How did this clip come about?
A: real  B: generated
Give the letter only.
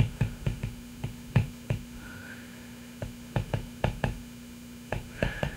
B